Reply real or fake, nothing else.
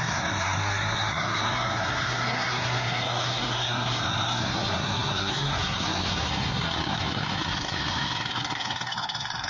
fake